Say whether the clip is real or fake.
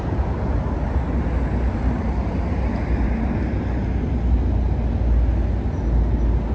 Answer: real